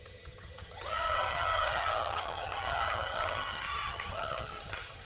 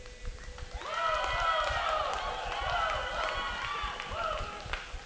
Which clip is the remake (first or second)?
first